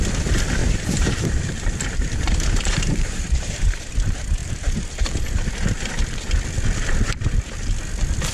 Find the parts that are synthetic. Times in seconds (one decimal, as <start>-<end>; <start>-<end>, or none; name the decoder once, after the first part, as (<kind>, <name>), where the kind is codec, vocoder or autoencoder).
0.6-3.9 (vocoder, BigVGAN v2); 4.4-5.5